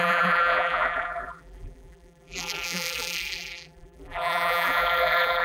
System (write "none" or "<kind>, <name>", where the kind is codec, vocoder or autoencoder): vocoder, BigVGAN v2